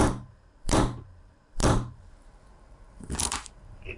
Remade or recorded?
remade